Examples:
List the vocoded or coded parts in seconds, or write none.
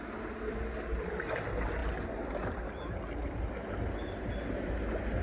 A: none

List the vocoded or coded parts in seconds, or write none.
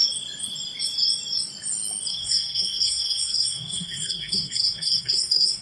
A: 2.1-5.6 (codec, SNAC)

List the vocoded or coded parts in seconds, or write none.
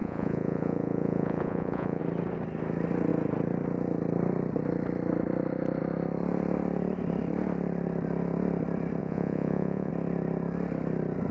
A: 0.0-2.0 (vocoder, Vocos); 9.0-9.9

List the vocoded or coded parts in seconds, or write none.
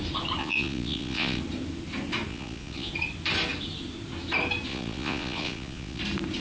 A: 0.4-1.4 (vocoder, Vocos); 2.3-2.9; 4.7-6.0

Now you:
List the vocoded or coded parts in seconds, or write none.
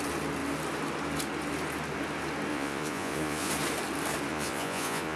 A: 2.5-3.5 (vocoder, Vocos); 4.3-5.2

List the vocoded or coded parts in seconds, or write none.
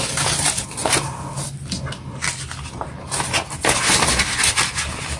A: none